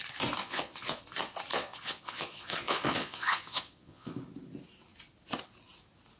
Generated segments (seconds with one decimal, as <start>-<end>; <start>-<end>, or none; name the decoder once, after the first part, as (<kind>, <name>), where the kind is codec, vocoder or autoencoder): 0.4-1.0 (vocoder, Vocos); 1.5-4.1